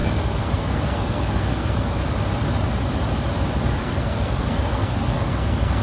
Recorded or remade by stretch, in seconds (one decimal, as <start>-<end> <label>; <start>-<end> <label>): 0.0-2.0 remade; 2.0-3.8 recorded; 3.8-5.8 remade